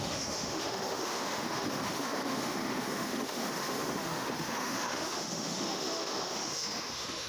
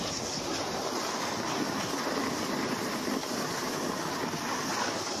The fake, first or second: first